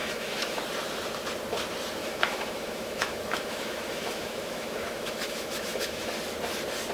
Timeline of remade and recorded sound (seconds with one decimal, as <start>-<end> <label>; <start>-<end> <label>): 0.0-0.6 remade; 0.6-2.0 recorded; 2.0-6.1 remade; 6.1-6.9 recorded